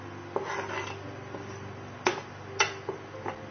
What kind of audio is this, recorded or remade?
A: recorded